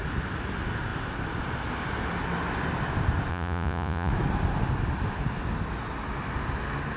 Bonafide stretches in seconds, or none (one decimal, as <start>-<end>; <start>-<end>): 0.0-3.3; 4.1-7.0